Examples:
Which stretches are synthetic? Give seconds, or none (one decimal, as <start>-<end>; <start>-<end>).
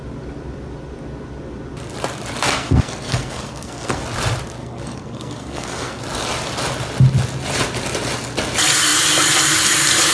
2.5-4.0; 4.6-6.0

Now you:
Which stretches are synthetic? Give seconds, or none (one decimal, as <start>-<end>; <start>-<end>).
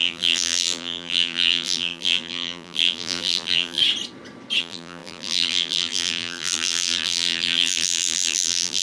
0.0-3.8; 4.6-8.8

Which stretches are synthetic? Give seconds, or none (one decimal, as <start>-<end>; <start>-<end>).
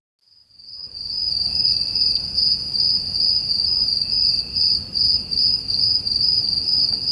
0.4-2.0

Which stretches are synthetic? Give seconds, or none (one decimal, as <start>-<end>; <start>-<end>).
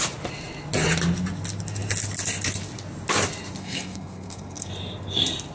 3.6-4.7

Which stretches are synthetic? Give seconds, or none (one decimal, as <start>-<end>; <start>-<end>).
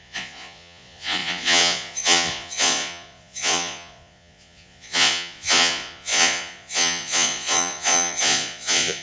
0.0-9.0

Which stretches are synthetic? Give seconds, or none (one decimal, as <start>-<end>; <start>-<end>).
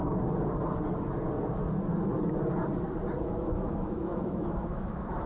3.2-5.3